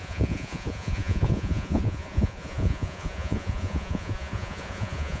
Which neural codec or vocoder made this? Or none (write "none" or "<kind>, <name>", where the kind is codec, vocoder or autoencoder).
vocoder, Vocos